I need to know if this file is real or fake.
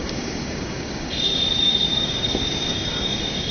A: fake